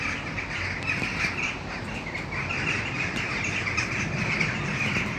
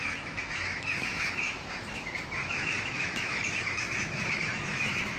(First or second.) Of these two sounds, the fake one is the second